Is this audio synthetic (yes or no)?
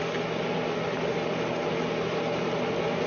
no